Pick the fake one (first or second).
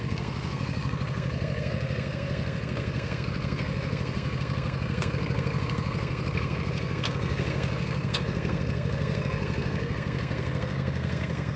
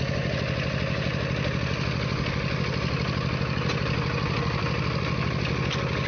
first